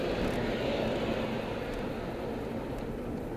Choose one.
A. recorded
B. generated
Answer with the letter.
A